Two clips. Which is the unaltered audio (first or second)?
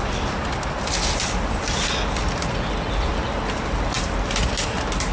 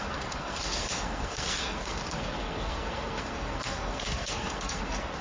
first